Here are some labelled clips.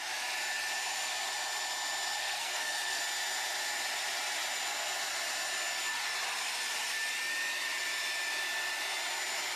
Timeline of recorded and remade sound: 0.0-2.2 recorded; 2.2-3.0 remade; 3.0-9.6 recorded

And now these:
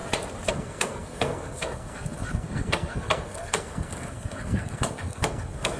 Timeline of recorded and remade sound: 0.0-0.5 recorded; 0.5-5.8 remade

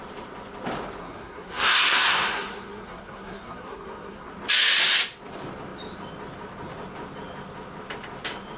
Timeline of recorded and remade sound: 0.0-1.0 recorded; 1.0-4.3 remade; 4.3-8.6 recorded

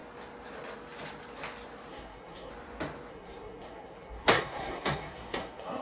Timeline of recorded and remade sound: 0.0-1.9 recorded; 1.9-2.5 remade; 2.5-3.1 recorded; 3.1-5.8 remade